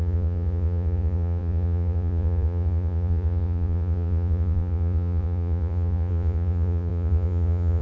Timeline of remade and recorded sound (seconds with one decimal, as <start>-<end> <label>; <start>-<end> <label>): 0.0-7.8 remade